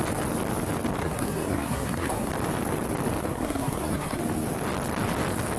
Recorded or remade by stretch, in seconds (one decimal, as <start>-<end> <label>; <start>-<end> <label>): 0.0-1.0 recorded; 1.0-2.3 remade; 2.3-3.3 recorded; 3.3-4.2 remade; 4.2-5.6 recorded